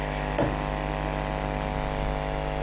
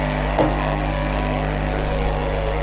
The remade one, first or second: second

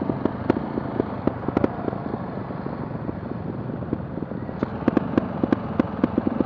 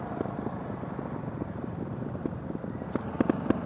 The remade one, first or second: second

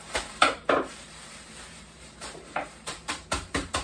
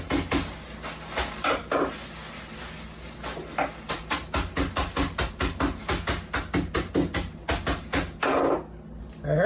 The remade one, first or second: first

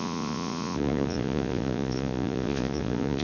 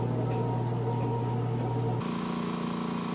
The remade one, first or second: first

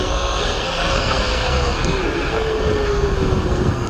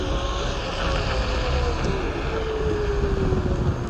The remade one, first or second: first